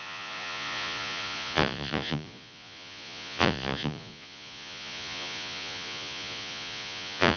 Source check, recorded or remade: remade